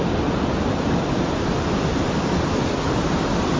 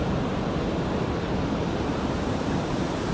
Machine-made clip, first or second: second